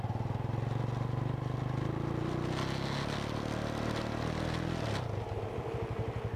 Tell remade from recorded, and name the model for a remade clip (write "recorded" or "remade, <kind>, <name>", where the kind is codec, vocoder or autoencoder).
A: recorded